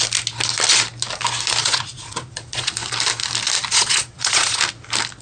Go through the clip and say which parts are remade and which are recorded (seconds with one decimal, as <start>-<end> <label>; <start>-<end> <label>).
0.0-1.6 recorded; 1.6-2.7 remade; 2.7-3.7 recorded; 3.7-4.6 remade; 4.6-5.2 recorded